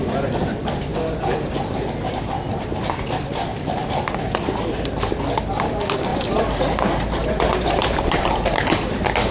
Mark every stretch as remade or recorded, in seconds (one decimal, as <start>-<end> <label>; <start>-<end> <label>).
0.0-3.5 recorded; 3.5-4.0 remade; 4.0-6.1 recorded; 6.1-8.9 remade; 8.9-9.3 recorded